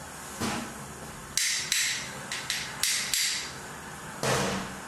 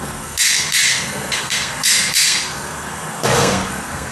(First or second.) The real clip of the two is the first